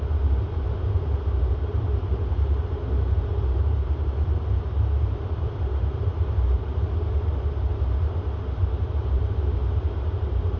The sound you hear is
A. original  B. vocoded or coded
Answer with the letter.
B